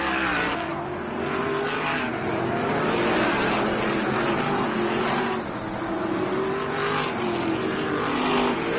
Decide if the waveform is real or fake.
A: real